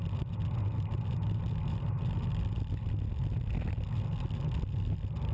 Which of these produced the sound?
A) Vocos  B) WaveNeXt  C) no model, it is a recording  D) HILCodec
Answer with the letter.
C